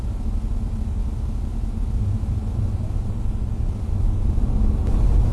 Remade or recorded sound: recorded